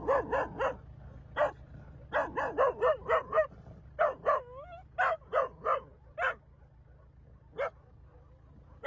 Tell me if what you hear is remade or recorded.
recorded